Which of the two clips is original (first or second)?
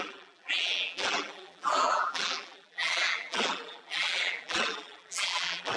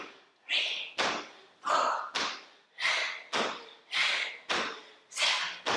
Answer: second